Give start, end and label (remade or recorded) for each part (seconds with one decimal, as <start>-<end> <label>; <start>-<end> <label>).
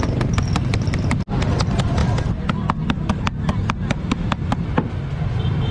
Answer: 0.0-5.7 recorded